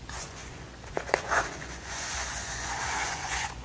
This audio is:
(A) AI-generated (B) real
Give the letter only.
A